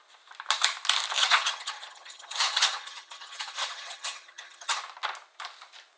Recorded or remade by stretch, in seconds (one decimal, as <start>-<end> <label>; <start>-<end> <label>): 0.0-1.2 recorded; 1.2-4.8 remade; 4.8-6.0 recorded